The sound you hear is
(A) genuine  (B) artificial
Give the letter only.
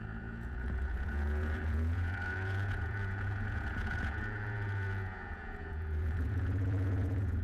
B